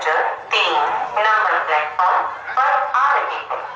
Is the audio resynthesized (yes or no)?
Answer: no